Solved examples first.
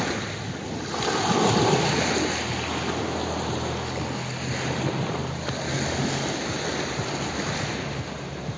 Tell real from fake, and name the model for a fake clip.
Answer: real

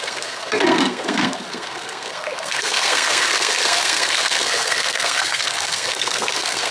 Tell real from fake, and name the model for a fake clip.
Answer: fake, codec, SNAC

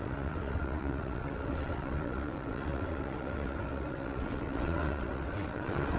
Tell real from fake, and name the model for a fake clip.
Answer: fake, vocoder, WaveNeXt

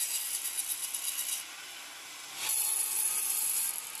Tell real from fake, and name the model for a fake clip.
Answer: real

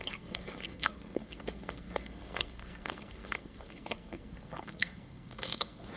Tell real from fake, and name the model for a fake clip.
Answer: fake, codec, SNAC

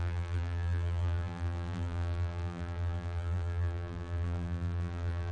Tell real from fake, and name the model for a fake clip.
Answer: fake, vocoder, BigVGAN v2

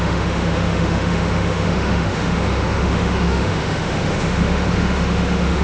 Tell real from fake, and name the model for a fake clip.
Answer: fake, autoencoder, DAC-VAE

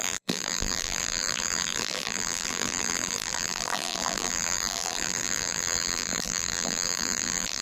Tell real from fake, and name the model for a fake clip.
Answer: fake, vocoder, BigVGAN v2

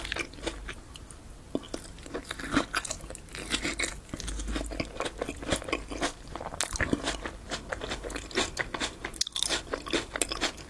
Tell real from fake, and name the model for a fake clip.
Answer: real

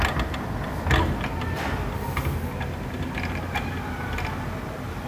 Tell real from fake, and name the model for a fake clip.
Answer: real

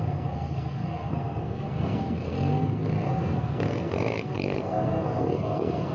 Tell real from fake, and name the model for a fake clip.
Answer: fake, codec, SNAC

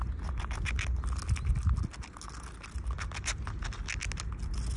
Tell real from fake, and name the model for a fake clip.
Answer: real